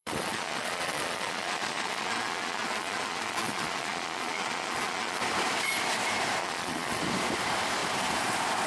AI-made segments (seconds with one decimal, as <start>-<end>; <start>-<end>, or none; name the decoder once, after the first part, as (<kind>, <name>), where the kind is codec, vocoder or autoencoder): 0.0-5.2 (vocoder, Vocos); 6.4-7.0